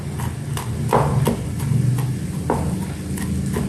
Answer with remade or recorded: recorded